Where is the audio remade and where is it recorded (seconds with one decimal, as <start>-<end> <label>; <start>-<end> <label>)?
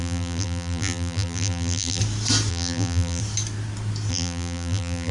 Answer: 0.0-2.0 remade; 2.0-2.5 recorded; 2.5-3.2 remade; 3.2-4.1 recorded; 4.1-5.1 remade